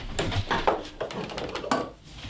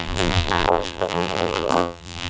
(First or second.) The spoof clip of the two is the second